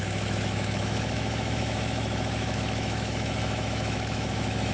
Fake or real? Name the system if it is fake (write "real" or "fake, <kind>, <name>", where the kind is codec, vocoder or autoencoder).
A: fake, autoencoder, DAC-VAE